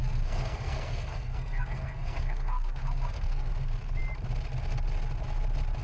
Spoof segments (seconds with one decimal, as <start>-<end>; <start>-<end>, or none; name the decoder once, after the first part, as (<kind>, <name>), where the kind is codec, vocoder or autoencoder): 0.0-3.5 (codec, SNAC)